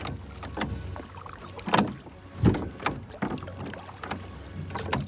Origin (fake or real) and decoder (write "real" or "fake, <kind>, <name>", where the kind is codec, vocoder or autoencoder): real